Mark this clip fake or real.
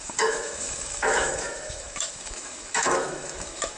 fake